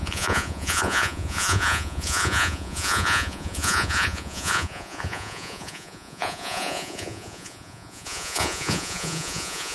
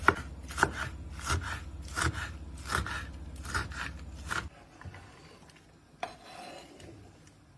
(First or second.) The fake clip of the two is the first